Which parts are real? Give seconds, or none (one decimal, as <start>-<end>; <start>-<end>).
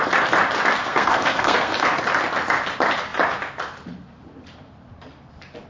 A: 0.0-0.8; 2.0-5.7